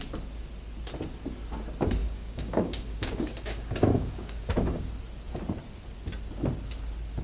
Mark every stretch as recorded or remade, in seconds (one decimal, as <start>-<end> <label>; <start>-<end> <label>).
0.0-2.0 recorded; 2.0-4.9 remade; 4.9-7.2 recorded